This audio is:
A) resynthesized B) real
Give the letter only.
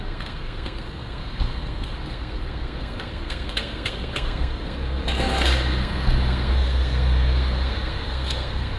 A